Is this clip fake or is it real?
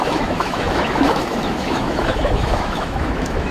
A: fake